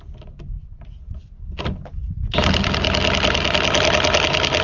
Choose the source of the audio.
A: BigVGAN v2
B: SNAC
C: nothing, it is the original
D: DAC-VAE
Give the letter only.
C